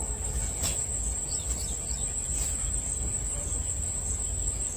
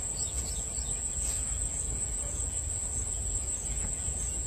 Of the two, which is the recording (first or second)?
first